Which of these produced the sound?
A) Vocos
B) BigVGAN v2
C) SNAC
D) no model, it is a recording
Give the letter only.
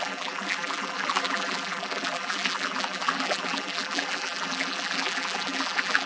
B